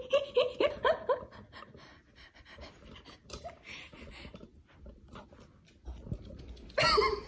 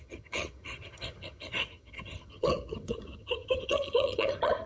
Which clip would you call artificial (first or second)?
second